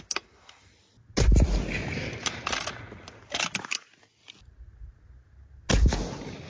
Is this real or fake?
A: real